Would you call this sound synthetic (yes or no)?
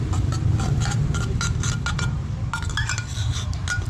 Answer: no